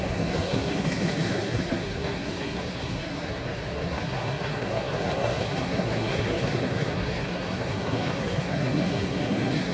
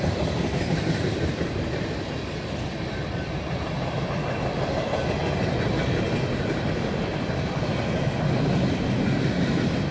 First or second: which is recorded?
second